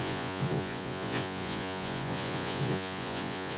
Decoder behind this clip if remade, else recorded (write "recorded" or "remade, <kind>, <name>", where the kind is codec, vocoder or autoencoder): remade, vocoder, Vocos